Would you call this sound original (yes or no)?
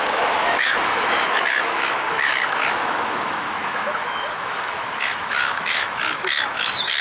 no